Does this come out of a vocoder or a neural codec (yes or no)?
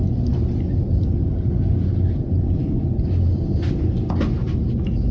no